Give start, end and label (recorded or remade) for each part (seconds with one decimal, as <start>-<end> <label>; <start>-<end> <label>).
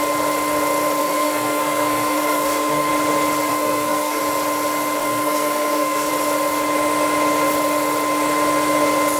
0.0-1.0 recorded; 1.0-2.9 remade; 2.9-3.5 recorded; 3.5-4.2 remade; 4.2-5.0 recorded; 5.0-6.1 remade; 6.1-9.2 recorded